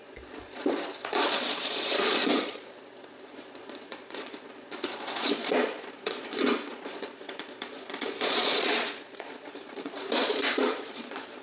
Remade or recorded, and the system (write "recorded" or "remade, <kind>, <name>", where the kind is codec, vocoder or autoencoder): remade, vocoder, Vocos